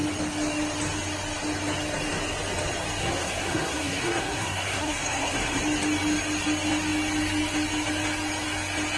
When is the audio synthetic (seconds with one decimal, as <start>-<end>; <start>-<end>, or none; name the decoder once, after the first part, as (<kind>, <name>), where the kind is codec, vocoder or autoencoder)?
3.0-5.6 (codec, SNAC)